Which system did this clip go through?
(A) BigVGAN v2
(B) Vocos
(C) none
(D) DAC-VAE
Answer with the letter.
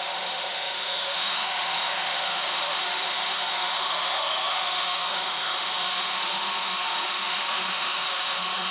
D